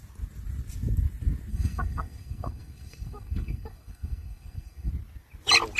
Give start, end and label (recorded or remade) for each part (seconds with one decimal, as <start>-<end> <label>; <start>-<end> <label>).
0.0-1.5 recorded; 1.5-4.9 remade; 4.9-5.8 recorded